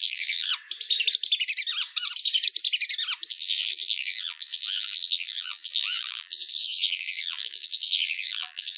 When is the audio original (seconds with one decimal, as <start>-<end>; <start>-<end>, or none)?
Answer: 0.5-3.3